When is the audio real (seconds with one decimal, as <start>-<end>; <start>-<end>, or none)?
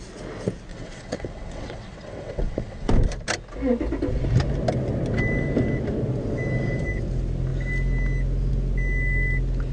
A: 0.0-0.7; 2.9-9.7